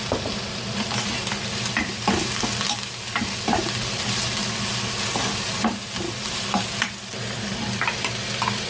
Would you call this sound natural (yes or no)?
yes